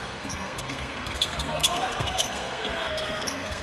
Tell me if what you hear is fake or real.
fake